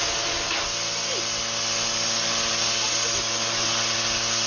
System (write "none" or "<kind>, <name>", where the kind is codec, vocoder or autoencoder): none